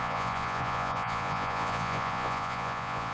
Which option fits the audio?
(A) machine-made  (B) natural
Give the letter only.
A